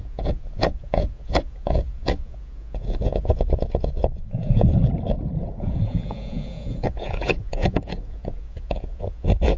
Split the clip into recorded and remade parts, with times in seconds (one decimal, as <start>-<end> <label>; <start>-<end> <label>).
0.0-4.8 remade; 4.8-5.4 recorded; 5.4-9.6 remade